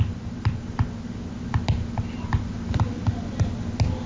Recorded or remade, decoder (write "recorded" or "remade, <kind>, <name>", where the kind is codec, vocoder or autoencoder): recorded